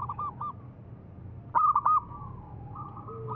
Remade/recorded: recorded